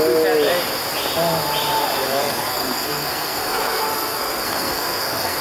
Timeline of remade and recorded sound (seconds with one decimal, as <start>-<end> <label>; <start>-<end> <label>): 0.0-2.1 recorded; 2.1-5.4 remade